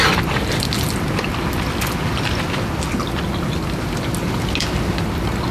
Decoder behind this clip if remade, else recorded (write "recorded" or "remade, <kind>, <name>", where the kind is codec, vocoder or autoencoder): recorded